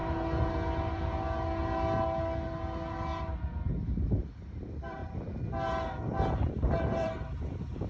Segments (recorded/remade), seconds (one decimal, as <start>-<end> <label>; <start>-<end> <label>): 0.0-4.6 recorded; 4.6-5.0 remade; 5.0-6.5 recorded; 6.5-7.9 remade